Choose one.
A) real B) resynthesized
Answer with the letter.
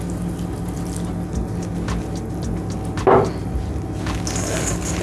A